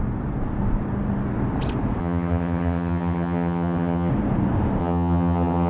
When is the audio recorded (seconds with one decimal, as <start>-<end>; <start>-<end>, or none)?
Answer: 0.0-2.0; 4.1-4.8